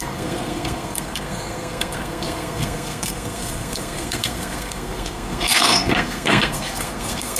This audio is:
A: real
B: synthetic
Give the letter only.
B